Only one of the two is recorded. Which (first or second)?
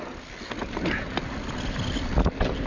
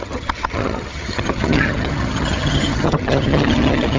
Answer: first